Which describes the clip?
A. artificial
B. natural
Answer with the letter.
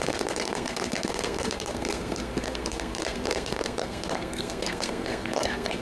A